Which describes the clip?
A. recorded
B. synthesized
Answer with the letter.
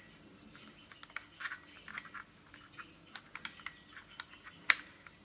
A